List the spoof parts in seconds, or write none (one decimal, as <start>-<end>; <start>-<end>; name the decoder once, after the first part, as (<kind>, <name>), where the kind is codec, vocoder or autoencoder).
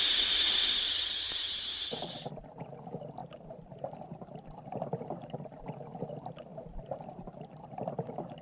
none